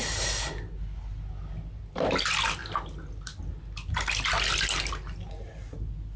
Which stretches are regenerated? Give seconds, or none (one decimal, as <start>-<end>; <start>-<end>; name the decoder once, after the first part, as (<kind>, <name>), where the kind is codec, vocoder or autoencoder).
none